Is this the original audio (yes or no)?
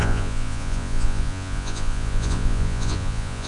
no